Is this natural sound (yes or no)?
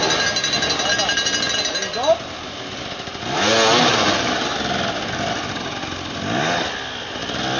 yes